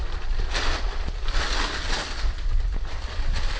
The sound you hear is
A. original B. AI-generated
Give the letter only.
A